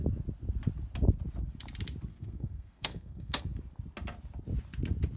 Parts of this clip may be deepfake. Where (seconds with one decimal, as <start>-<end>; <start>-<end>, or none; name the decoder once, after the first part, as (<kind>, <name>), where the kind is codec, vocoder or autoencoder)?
2.1-3.4 (codec, SNAC)

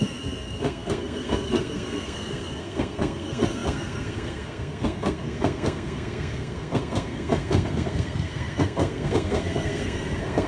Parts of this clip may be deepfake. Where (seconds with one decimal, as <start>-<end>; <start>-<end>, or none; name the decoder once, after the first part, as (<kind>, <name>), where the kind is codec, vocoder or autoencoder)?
0.0-10.5 (codec, SNAC)